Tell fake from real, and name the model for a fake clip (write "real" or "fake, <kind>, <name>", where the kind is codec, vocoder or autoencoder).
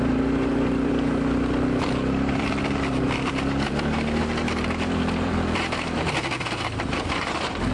fake, vocoder, BigVGAN v2